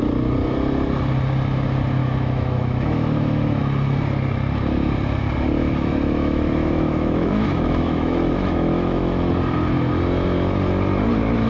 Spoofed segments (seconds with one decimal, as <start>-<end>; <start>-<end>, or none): 2.0-3.6; 5.6-9.3